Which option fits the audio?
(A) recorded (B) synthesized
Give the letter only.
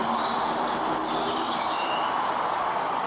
A